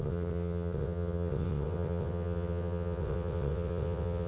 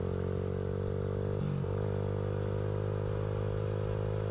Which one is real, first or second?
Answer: second